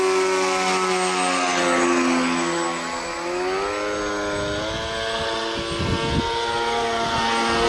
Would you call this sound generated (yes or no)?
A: no